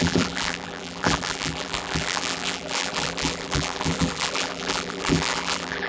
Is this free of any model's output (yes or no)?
no